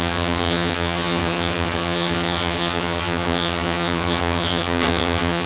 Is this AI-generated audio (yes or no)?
yes